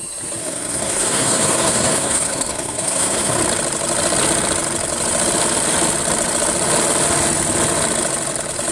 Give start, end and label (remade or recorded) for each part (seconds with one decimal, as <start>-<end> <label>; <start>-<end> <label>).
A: 0.0-0.4 recorded; 0.4-3.4 remade; 3.4-8.7 recorded